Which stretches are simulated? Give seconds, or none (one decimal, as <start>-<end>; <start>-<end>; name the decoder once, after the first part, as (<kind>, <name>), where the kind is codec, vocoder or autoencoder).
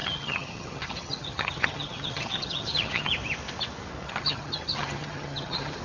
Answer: 0.0-3.1 (vocoder, HiFi-GAN); 4.0-5.8